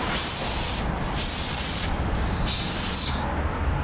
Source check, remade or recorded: recorded